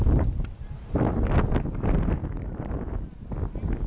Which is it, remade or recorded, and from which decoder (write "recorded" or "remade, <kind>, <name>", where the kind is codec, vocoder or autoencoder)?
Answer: recorded